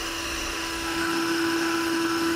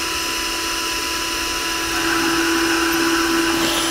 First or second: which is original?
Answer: second